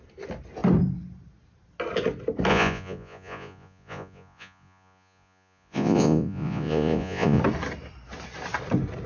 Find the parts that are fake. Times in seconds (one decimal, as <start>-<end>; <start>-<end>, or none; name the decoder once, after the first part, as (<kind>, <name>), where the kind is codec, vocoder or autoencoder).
2.5-7.4 (vocoder, Vocos)